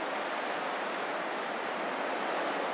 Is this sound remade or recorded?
recorded